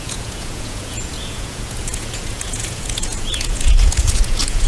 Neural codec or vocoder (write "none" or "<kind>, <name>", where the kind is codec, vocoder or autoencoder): vocoder, Vocos